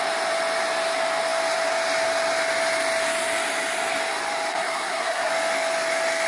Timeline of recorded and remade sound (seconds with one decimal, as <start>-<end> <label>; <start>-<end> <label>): 0.0-4.5 recorded; 4.5-5.3 remade; 5.3-6.3 recorded